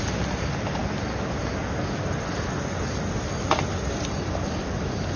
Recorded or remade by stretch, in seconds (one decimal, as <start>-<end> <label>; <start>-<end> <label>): 0.0-5.2 recorded